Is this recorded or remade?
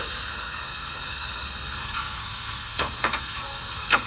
remade